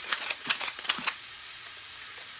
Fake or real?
fake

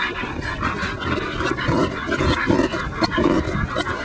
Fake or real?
real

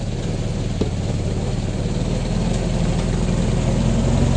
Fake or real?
real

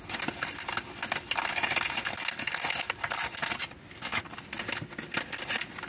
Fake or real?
real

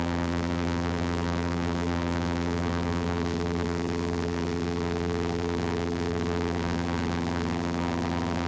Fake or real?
fake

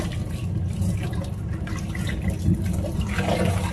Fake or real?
real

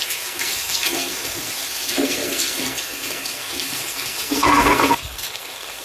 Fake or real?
fake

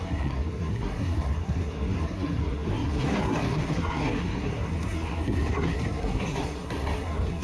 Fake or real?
fake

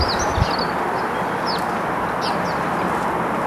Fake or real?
real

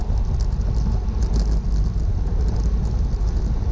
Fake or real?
real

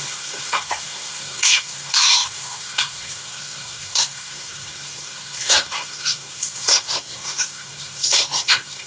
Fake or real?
fake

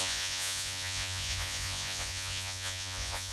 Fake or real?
fake